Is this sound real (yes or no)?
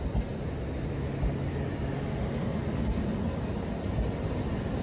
yes